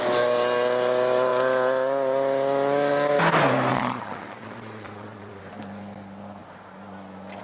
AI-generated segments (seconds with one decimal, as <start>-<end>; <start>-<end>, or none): 3.7-5.4

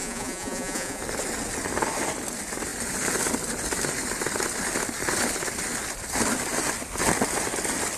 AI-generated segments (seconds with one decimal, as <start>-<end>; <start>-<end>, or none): 0.0-1.0

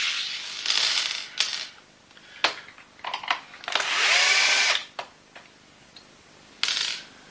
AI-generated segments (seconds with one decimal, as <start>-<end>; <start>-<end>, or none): 4.8-5.8